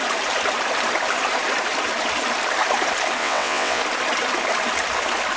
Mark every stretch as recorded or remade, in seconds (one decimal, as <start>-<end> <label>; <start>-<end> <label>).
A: 0.0-3.2 recorded; 3.2-3.8 remade; 3.8-5.4 recorded